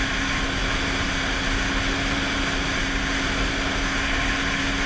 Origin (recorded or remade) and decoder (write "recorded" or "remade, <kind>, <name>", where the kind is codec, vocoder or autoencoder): recorded